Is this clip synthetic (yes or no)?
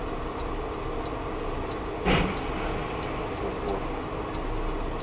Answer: no